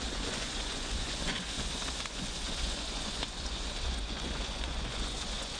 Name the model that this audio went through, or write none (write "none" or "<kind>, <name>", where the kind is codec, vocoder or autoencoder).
vocoder, Vocos